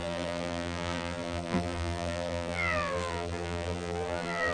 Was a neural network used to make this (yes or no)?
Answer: yes